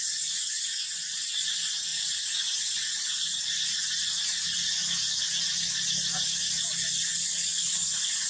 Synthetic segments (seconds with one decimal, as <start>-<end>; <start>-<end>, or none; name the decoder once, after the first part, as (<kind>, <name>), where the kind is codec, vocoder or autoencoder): none